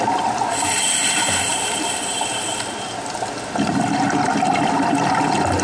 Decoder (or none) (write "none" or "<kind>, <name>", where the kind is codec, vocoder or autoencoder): none